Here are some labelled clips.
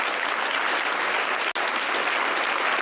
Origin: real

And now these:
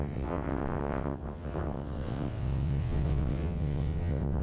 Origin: fake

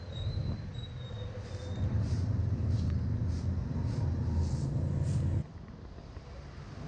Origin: real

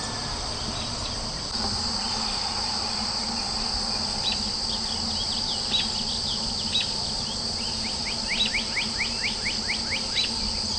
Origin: real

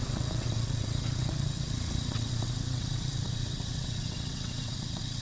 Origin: fake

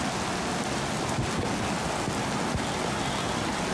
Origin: real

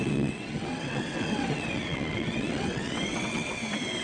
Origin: fake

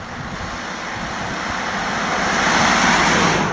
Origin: real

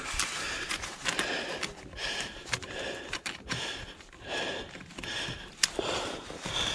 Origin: real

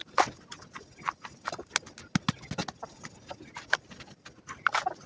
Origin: real